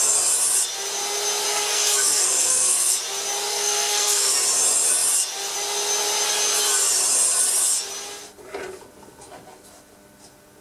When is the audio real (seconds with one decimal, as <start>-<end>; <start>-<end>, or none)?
0.0-1.5; 3.0-3.5; 4.3-10.6